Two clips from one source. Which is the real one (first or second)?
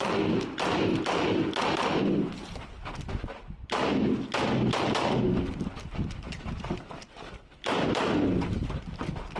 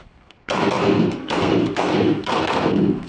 first